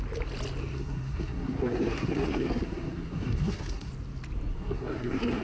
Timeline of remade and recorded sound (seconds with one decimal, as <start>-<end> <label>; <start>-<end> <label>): 0.0-0.7 recorded; 0.7-3.9 remade; 3.9-4.5 recorded; 4.5-5.4 remade